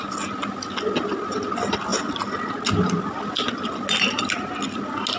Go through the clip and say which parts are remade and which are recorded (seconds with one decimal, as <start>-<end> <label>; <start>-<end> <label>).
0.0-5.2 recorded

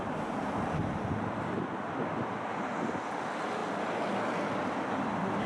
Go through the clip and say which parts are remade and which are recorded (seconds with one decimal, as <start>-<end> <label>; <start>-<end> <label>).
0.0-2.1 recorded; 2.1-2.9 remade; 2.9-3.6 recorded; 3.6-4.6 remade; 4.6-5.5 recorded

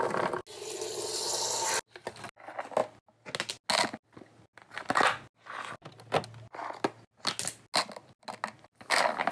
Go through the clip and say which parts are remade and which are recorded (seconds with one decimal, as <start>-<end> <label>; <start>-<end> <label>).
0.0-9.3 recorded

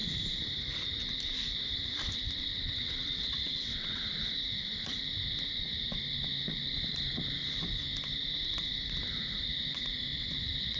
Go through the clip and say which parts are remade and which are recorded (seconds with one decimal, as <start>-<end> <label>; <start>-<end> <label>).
0.0-2.5 recorded; 2.5-4.0 remade; 4.0-10.1 recorded; 10.1-10.8 remade

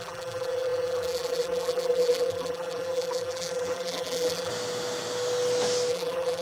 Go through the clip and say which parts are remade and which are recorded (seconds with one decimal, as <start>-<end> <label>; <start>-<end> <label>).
0.0-4.5 remade; 4.5-5.9 recorded; 5.9-6.4 remade

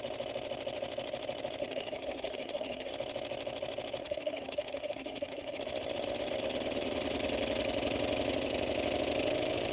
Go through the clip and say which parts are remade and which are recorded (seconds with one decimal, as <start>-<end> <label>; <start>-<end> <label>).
0.0-1.6 recorded; 1.6-2.9 remade; 2.9-4.0 recorded; 4.0-5.6 remade; 5.6-9.7 recorded

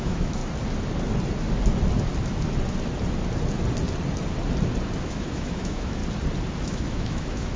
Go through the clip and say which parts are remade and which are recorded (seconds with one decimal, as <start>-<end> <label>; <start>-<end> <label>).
0.0-0.4 remade; 0.4-5.0 recorded; 5.0-6.0 remade; 6.0-6.6 recorded; 6.6-7.6 remade

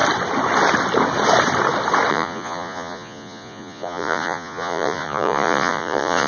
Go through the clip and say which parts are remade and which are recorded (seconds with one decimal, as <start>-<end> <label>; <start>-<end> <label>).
0.0-2.1 recorded; 2.1-6.3 remade